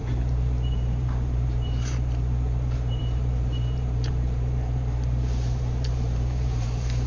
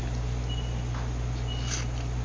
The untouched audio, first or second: second